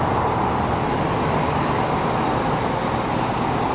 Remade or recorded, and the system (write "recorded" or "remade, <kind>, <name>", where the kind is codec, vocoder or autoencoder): recorded